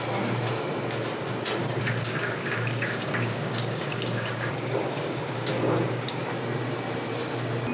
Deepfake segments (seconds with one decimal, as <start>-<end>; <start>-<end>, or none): 1.6-6.2